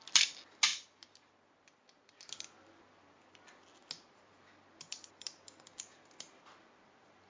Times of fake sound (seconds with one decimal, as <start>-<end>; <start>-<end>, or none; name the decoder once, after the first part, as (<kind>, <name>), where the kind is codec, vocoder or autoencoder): none